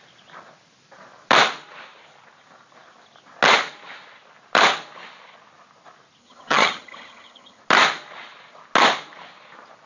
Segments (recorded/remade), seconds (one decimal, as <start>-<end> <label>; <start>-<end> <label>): 0.0-6.2 recorded; 6.2-7.6 remade; 7.6-9.9 recorded